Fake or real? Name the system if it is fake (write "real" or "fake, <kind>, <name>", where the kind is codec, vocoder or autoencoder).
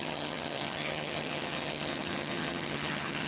fake, vocoder, HiFi-GAN